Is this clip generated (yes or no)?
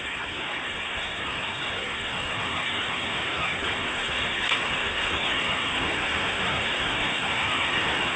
yes